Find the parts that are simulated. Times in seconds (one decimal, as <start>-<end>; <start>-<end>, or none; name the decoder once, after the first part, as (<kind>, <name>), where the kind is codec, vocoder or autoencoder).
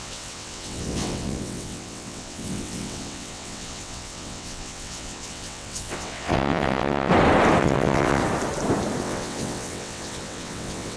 0.0-7.1 (vocoder, WaveNeXt); 7.6-8.2; 9.0-11.0